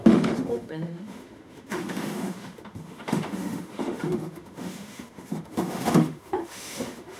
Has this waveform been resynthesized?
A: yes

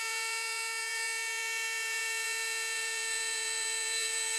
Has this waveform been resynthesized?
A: yes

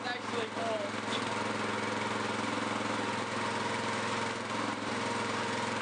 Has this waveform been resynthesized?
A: no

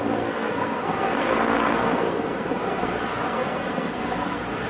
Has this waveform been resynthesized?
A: yes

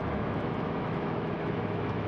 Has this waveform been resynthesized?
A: yes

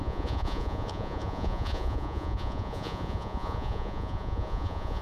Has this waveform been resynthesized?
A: yes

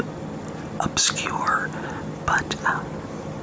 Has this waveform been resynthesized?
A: no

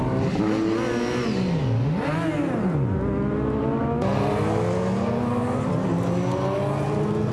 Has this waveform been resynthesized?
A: no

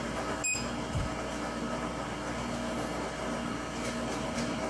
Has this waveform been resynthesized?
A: no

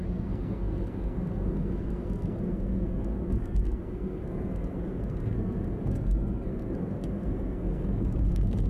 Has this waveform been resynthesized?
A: yes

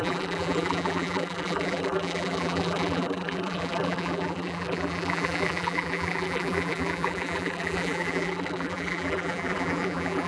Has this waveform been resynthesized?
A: yes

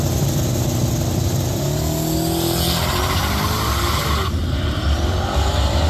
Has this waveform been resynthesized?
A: no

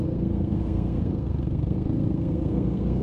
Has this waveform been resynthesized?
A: yes